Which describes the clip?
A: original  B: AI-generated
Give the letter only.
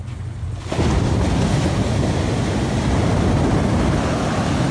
A